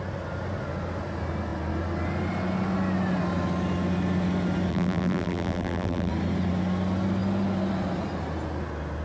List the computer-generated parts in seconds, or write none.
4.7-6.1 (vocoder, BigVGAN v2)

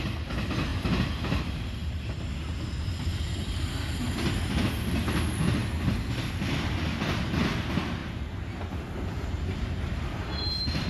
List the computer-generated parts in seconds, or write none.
0.7-4.7 (vocoder, BigVGAN v2); 5.6-6.3; 8.0-10.9

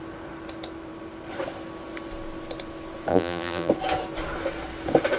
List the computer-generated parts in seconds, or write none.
3.1-3.7 (vocoder, BigVGAN v2)

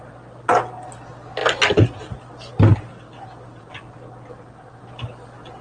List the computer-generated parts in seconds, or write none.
none

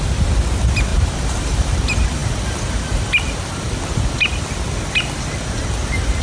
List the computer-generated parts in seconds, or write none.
0.9-1.8 (vocoder, BigVGAN v2)